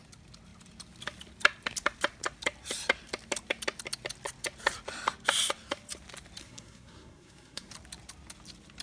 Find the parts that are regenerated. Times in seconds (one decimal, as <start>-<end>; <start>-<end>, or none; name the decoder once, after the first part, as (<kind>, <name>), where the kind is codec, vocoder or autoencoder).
6.4-7.7 (codec, SNAC)